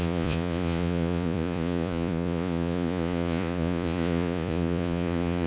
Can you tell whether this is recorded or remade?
remade